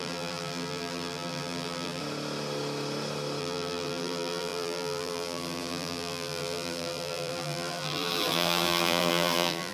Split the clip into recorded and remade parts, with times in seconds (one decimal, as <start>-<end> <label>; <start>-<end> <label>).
0.0-2.0 remade; 2.0-3.4 recorded; 3.4-9.7 remade